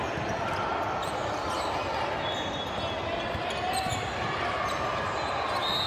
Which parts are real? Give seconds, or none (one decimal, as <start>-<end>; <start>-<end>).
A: 0.0-5.9